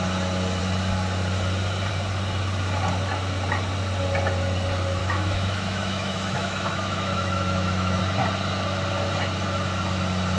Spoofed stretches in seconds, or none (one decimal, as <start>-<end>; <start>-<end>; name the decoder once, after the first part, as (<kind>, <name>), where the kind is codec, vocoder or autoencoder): 5.0-8.0 (autoencoder, DAC-VAE)